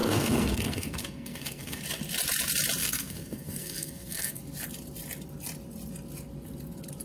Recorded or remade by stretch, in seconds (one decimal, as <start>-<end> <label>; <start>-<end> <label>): 0.0-1.8 remade; 1.8-2.8 recorded; 2.8-4.4 remade; 4.4-7.0 recorded